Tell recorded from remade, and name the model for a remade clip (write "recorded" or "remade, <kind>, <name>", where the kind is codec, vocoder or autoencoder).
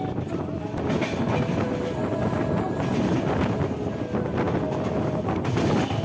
recorded